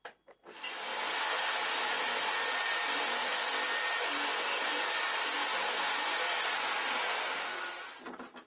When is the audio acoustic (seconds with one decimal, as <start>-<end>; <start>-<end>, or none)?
0.0-8.5